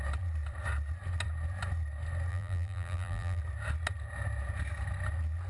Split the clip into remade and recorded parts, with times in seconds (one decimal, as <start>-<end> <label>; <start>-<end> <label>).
0.0-2.3 recorded; 2.3-3.4 remade; 3.4-5.5 recorded